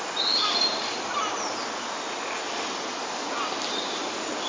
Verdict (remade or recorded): recorded